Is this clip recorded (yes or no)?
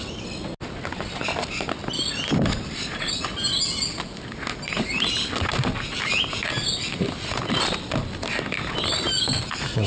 yes